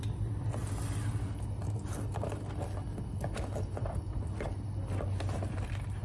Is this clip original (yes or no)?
yes